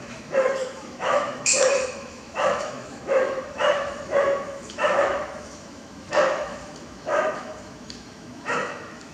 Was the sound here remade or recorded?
remade